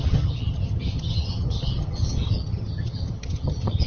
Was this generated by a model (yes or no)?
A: yes